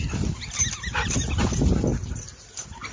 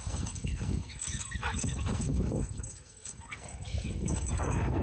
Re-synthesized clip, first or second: second